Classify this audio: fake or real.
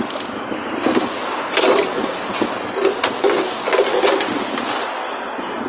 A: real